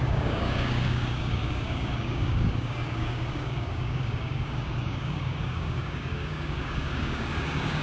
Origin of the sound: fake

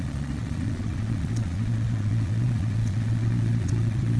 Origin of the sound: fake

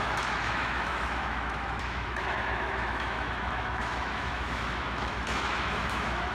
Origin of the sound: fake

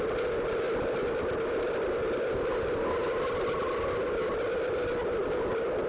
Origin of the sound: real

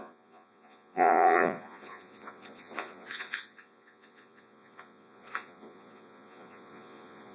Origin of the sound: fake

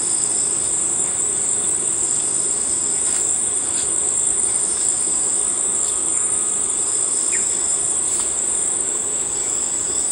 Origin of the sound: fake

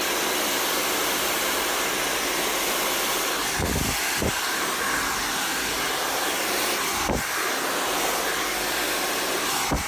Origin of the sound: real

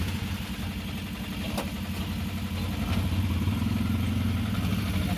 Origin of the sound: real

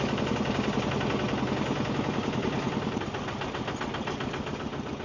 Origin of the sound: real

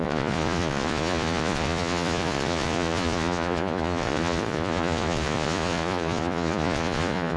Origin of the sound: fake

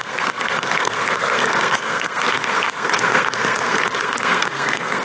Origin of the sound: fake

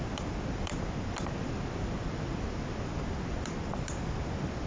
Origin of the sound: real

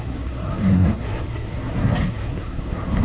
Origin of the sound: fake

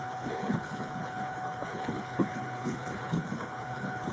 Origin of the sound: fake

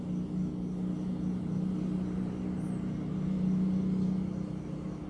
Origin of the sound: real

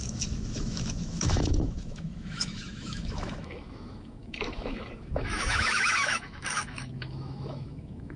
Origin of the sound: fake